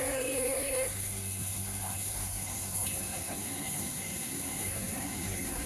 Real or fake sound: fake